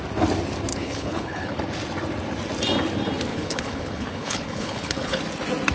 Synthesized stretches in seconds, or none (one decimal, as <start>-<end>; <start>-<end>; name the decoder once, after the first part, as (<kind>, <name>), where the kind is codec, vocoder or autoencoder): 0.7-1.6 (codec, HILCodec); 3.3-5.2